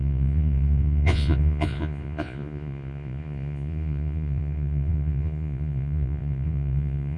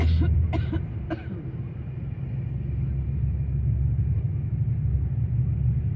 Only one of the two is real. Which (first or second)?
second